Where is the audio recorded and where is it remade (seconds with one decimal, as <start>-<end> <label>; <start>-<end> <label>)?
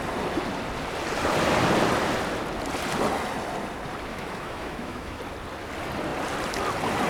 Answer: 0.0-4.1 recorded; 4.1-5.2 remade; 5.2-7.1 recorded